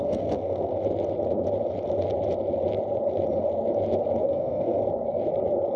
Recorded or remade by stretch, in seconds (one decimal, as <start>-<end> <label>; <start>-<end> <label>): 0.0-0.7 remade; 0.7-4.2 recorded; 4.2-4.8 remade; 4.8-5.8 recorded